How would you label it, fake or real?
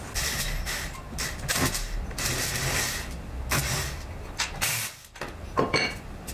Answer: real